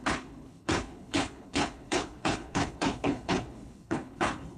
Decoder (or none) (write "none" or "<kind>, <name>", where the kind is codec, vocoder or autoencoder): codec, HILCodec